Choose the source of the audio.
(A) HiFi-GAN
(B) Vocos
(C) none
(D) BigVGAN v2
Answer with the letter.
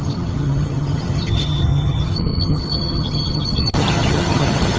A